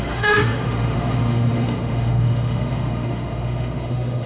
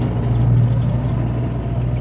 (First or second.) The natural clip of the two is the second